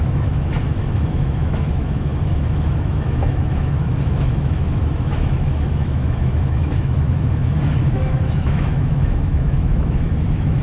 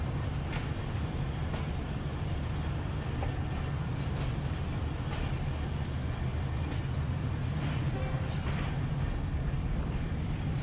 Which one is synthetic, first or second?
first